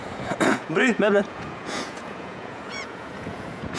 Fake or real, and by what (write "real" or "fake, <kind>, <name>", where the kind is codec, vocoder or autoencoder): fake, vocoder, Vocos